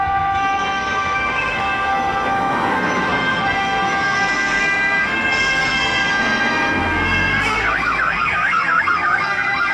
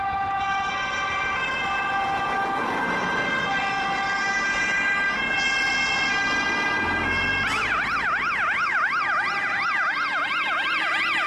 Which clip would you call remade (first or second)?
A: first